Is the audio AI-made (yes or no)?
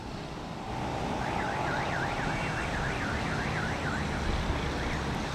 no